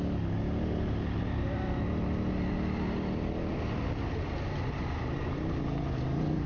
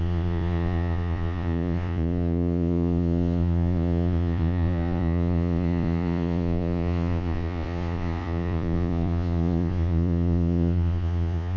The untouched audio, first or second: first